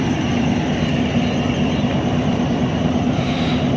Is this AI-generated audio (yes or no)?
no